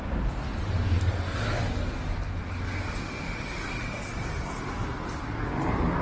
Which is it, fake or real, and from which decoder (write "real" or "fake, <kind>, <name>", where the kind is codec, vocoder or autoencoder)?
real